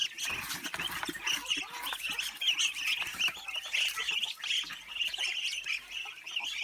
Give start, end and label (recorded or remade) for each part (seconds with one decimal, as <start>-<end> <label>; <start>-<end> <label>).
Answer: 0.0-6.6 recorded